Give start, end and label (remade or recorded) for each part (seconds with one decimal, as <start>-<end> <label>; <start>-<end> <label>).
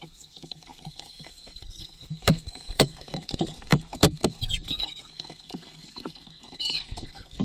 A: 0.0-7.4 remade